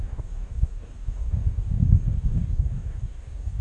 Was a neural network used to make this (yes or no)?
yes